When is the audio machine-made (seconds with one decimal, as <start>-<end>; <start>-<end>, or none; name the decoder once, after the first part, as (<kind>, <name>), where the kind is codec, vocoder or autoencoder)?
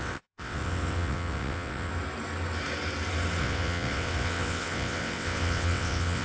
0.0-1.9 (vocoder, WaveNeXt); 3.4-6.2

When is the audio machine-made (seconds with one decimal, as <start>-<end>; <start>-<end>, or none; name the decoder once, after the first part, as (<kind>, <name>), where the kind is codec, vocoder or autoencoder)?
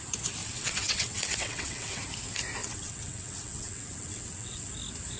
0.4-2.0 (vocoder, WaveNeXt); 2.6-4.7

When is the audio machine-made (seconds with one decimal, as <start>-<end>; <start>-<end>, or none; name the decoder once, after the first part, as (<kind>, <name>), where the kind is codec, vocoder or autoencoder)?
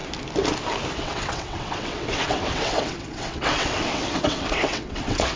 0.9-5.4 (vocoder, WaveNeXt)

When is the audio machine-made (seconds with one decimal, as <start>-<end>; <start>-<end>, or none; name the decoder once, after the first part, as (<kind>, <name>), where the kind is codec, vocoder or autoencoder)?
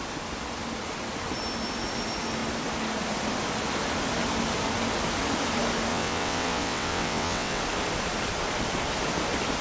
5.9-7.6 (vocoder, WaveNeXt)